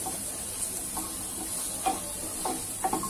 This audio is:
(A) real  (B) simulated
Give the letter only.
A